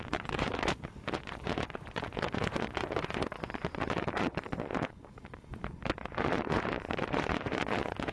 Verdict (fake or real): fake